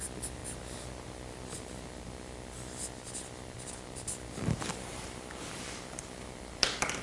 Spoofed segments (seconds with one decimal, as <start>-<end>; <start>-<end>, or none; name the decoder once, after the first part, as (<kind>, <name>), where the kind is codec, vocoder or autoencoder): 0.0-0.4 (vocoder, BigVGAN v2); 4.6-7.0

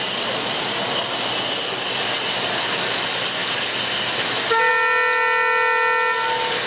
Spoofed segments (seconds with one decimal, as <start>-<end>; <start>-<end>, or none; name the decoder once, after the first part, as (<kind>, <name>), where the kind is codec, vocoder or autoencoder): none

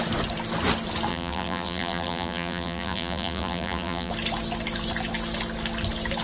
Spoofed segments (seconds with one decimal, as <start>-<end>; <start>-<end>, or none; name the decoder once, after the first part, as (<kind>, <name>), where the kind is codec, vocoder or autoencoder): 1.1-4.1 (vocoder, BigVGAN v2)

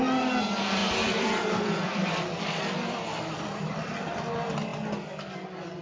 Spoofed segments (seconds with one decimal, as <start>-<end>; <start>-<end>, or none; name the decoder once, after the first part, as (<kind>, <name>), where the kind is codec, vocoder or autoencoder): 0.8-4.3 (vocoder, BigVGAN v2)

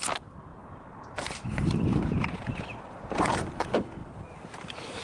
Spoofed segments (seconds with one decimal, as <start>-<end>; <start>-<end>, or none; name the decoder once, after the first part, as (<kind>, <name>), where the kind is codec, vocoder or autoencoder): 0.5-3.5 (vocoder, BigVGAN v2); 4.0-5.0

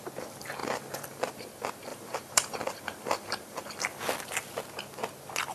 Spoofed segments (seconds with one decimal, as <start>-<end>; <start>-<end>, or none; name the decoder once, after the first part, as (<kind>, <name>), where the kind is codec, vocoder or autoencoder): 0.6-1.3 (vocoder, BigVGAN v2); 1.9-4.6

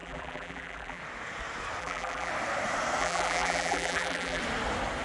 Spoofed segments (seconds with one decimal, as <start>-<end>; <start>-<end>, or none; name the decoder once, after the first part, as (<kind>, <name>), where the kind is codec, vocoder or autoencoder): 0.0-1.0 (vocoder, BigVGAN v2); 1.8-2.3; 3.0-4.4